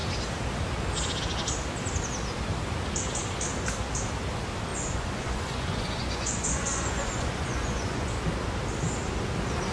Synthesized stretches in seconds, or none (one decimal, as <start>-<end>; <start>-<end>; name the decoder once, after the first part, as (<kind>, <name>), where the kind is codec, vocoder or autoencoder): 4.7-8.1 (vocoder, Vocos)